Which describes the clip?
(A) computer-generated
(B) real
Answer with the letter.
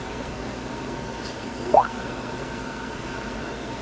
A